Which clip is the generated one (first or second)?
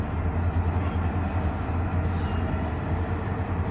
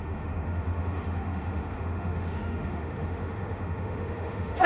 second